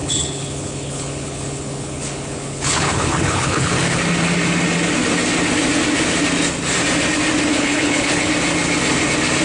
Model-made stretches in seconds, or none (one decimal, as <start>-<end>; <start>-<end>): 0.0-4.0; 7.5-8.3